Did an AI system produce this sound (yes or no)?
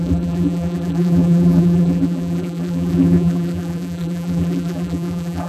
yes